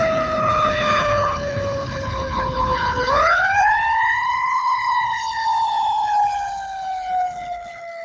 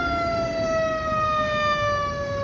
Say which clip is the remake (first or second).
first